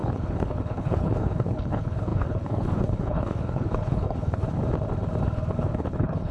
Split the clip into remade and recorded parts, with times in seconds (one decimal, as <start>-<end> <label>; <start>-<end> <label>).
0.0-4.6 remade; 4.6-5.5 recorded; 5.5-6.3 remade